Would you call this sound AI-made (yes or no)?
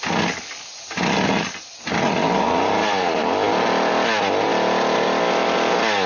no